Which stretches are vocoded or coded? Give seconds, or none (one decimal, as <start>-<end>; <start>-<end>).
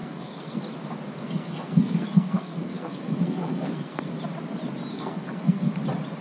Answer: 0.0-0.6; 1.2-4.1; 4.9-5.7